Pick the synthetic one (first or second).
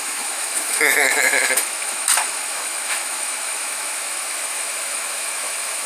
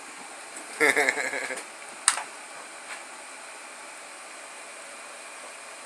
first